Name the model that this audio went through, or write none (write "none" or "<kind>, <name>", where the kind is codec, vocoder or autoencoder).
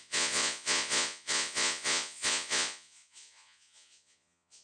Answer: vocoder, Vocos